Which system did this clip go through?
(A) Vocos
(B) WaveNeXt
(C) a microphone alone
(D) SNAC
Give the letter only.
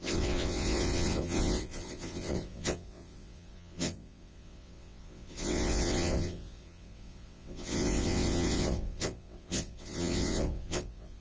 B